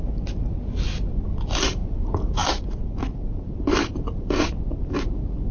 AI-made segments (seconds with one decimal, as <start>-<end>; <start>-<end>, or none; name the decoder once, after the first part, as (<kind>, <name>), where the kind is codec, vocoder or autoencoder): 1.8-4.5 (vocoder, BigVGAN v2)